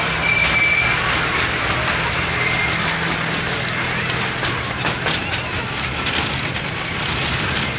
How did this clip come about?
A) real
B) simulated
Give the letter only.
A